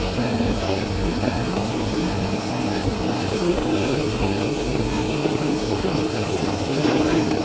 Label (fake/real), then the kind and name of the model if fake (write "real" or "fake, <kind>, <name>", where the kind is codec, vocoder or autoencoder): fake, codec, SNAC